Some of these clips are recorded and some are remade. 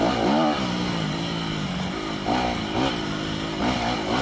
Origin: recorded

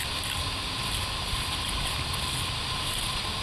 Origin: recorded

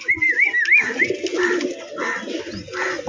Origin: recorded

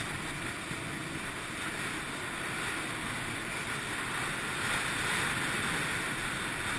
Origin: recorded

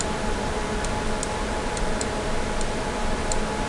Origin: recorded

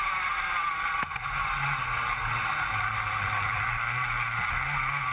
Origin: recorded